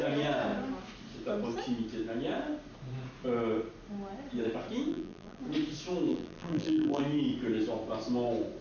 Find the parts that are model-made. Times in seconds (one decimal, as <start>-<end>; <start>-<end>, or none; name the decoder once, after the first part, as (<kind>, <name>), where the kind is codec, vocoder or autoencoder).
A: 4.9-5.4 (vocoder, BigVGAN v2); 6.1-7.0